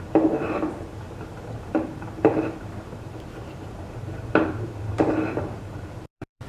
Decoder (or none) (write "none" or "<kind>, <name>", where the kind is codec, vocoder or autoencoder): vocoder, BigVGAN v2